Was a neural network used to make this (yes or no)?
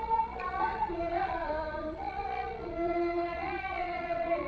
yes